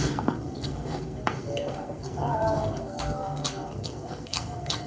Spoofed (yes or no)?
yes